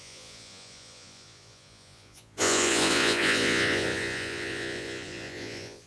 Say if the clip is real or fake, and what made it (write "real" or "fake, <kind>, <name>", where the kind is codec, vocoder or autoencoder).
fake, vocoder, Vocos